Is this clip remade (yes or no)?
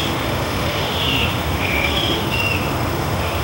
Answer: yes